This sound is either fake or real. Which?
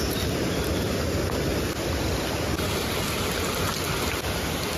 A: real